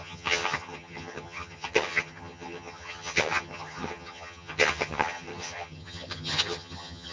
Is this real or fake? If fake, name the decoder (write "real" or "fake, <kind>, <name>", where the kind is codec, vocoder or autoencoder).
fake, vocoder, HiFi-GAN